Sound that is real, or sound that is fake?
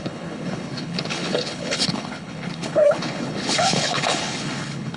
fake